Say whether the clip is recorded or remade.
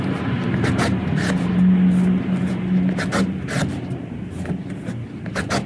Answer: recorded